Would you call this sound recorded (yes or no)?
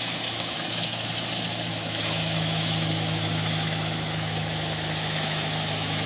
no